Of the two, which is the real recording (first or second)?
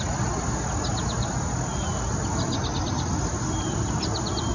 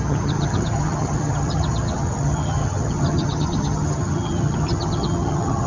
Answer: first